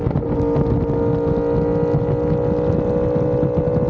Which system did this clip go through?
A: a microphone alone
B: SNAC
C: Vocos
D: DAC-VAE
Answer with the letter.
A